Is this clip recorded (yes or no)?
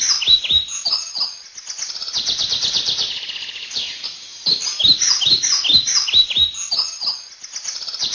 yes